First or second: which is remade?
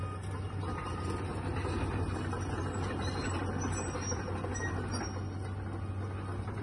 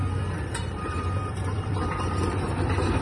second